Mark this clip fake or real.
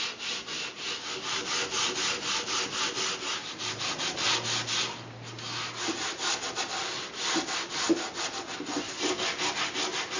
real